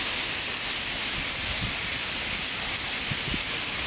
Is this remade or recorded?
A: recorded